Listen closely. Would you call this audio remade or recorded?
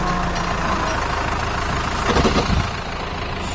recorded